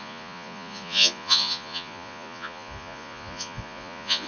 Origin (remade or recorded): remade